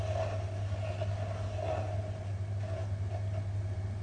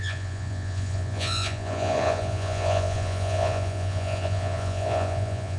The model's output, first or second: second